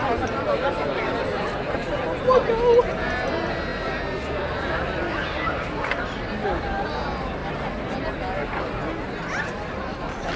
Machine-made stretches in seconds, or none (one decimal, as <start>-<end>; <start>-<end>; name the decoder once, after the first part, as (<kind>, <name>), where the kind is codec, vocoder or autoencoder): none